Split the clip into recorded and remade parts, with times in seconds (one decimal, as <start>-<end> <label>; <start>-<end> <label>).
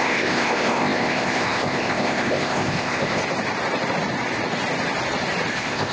0.0-3.2 remade; 3.2-5.5 recorded; 5.5-5.9 remade